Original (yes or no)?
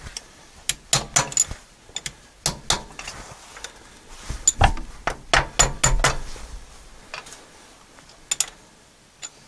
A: yes